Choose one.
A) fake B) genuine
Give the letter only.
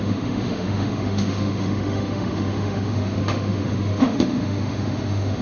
A